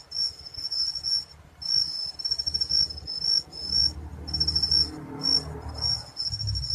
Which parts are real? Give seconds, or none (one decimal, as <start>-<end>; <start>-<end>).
0.0-6.7